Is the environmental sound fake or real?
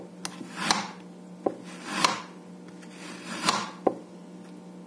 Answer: real